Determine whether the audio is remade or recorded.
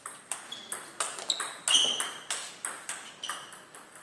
recorded